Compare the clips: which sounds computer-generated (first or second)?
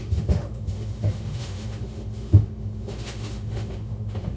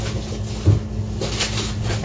first